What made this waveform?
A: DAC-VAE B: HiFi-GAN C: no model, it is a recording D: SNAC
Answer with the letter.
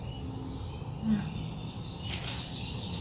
C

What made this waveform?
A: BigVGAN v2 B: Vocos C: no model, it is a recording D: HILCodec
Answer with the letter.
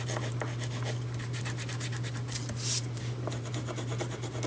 C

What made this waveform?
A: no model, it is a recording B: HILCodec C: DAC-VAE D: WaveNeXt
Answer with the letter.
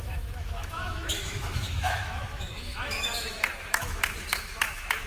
C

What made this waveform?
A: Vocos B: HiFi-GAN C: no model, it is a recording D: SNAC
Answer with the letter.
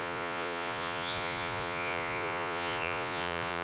A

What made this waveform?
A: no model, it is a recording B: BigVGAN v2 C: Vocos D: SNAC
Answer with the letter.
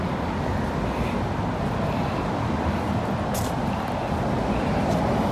A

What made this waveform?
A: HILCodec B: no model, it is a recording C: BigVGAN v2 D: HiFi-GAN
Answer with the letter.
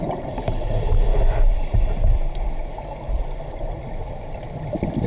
C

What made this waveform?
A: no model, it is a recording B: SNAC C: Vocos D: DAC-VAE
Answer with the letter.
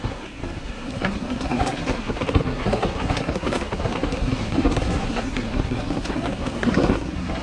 B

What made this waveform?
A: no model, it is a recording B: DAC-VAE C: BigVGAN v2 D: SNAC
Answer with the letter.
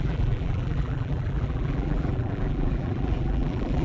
C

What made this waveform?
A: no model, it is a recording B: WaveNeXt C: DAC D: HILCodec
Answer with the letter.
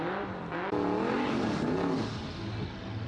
A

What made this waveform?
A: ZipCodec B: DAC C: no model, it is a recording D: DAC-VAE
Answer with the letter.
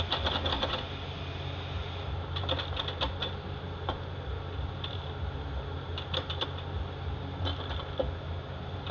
C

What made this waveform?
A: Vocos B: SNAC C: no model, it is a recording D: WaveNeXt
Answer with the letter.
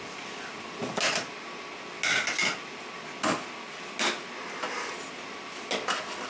C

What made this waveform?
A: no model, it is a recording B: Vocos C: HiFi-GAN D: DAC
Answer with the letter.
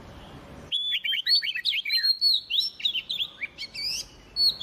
A